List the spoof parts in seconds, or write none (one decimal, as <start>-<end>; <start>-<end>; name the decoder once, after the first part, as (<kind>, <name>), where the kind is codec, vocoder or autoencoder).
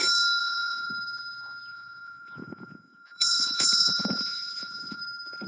0.4-0.9 (vocoder, Vocos); 1.7-5.0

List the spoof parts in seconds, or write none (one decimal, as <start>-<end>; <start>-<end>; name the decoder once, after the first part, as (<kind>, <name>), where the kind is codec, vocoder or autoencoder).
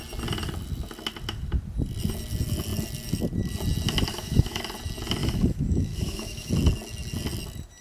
4.1-4.6 (autoencoder, DAC-VAE); 5.2-6.5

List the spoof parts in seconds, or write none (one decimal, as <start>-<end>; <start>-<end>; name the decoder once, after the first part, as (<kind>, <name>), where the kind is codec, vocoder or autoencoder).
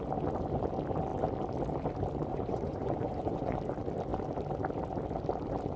2.3-3.6 (vocoder, Vocos)